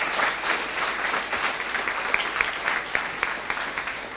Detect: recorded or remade recorded